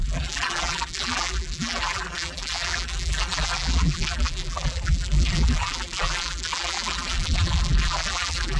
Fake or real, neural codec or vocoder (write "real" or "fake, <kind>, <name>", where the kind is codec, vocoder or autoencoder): fake, vocoder, BigVGAN v2